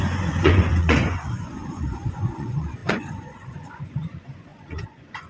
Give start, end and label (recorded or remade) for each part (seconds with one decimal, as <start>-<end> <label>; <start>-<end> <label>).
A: 0.0-5.3 remade